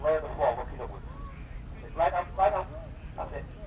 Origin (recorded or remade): recorded